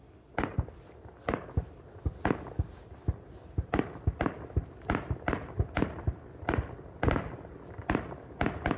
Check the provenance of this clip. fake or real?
real